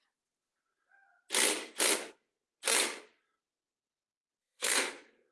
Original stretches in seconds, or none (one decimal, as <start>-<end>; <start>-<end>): 0.0-4.4